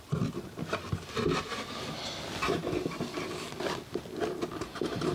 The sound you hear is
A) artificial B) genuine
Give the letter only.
B